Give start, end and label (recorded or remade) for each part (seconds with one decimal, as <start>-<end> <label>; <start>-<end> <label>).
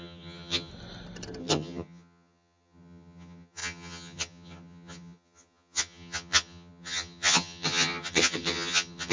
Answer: 0.0-0.7 remade; 0.7-1.4 recorded; 1.4-9.1 remade